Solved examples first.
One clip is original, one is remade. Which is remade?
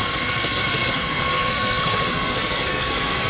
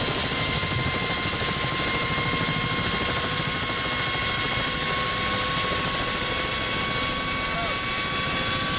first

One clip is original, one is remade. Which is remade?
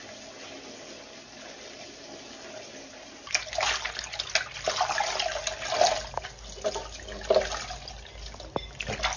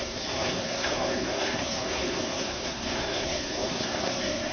second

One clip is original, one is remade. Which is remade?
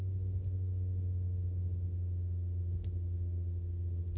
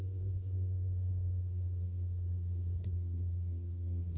second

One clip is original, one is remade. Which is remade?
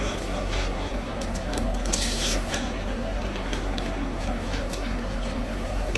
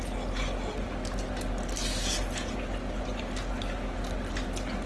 first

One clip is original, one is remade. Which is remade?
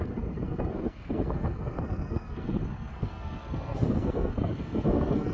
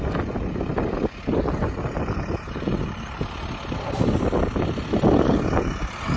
first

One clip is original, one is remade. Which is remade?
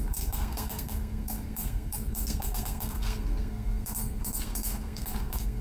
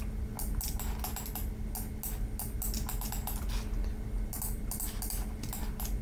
first